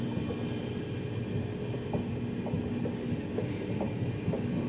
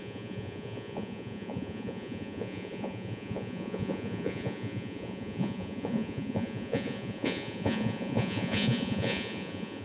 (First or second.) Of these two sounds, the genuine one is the first